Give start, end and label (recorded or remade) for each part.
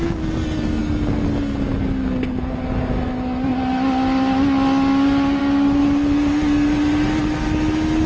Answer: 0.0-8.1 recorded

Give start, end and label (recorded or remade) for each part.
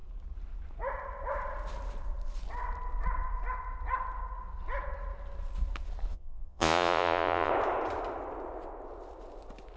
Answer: 0.0-6.1 recorded; 6.1-7.5 remade; 7.5-9.8 recorded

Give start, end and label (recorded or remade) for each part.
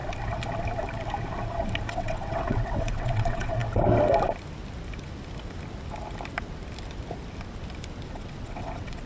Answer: 0.0-1.9 recorded; 1.9-3.6 remade; 3.6-8.1 recorded; 8.1-9.1 remade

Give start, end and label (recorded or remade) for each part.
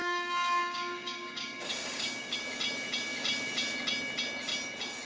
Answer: 0.0-2.4 remade; 2.4-5.1 recorded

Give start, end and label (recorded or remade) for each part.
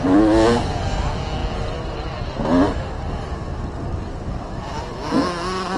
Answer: 0.0-5.8 recorded